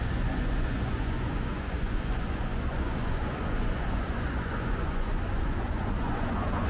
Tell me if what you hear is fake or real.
fake